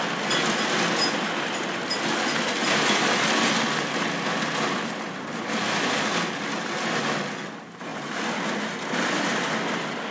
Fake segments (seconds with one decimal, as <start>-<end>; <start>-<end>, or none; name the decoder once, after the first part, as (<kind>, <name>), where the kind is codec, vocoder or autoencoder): none